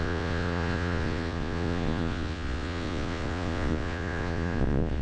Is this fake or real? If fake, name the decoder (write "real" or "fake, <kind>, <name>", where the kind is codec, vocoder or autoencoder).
fake, vocoder, Vocos